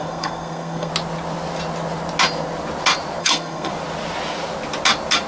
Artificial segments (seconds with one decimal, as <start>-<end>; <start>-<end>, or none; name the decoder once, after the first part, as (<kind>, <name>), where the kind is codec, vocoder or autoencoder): 0.0-0.9 (codec, SNAC); 3.2-3.7